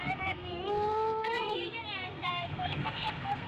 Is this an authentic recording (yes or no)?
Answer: no